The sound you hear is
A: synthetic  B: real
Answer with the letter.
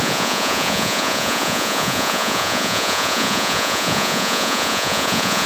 A